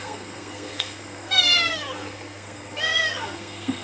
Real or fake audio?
fake